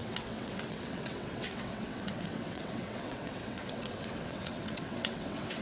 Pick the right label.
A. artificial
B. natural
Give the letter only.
A